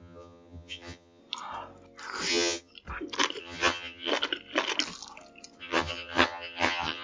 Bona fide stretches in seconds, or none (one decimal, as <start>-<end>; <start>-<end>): 1.2-2.3; 2.7-3.4; 4.1-5.6